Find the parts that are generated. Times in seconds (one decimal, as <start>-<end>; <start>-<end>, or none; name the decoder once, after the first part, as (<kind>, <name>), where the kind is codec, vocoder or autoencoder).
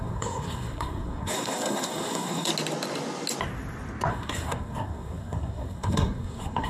0.0-2.5 (codec, SNAC); 4.1-6.7